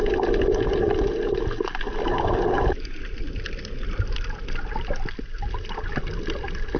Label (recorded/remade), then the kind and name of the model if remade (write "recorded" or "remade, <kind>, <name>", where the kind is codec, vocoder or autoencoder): recorded